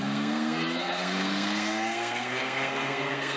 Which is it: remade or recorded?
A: remade